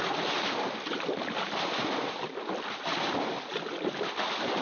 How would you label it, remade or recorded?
recorded